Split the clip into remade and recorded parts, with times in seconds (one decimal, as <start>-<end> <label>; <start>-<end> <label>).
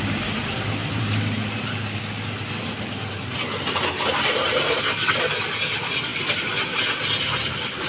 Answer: 0.0-0.8 recorded; 0.8-1.7 remade; 1.7-7.9 recorded